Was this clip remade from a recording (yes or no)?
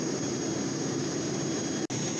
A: no